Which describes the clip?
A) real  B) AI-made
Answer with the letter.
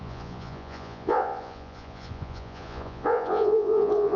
B